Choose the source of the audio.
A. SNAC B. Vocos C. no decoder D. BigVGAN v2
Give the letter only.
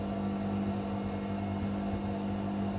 C